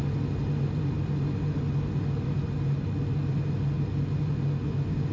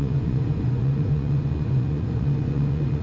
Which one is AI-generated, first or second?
second